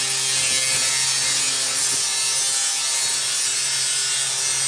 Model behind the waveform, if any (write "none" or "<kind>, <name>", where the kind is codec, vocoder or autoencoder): none